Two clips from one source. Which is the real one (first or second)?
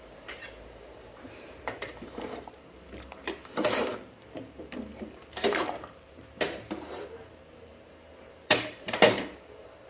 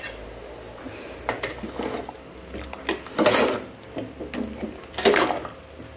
second